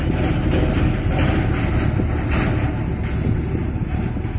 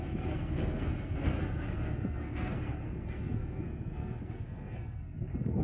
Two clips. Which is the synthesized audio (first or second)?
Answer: second